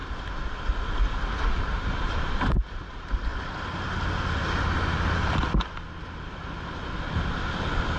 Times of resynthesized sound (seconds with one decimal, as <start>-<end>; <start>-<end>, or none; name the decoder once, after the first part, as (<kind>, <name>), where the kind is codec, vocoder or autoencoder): 1.6-3.3 (vocoder, BigVGAN v2)